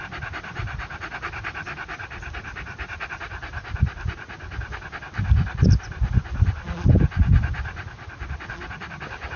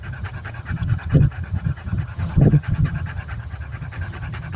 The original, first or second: first